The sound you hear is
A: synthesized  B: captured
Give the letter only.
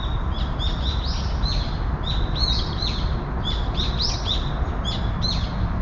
B